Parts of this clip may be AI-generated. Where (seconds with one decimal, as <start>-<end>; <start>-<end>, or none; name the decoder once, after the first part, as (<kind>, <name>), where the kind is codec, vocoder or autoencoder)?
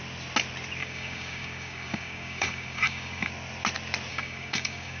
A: 0.8-3.3 (codec, DAC); 4.1-5.0